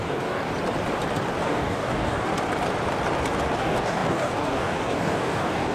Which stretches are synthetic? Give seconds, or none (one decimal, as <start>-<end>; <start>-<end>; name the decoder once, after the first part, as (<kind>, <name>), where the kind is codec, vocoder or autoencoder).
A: 0.0-0.5 (codec, DAC); 1.4-2.3; 3.6-5.7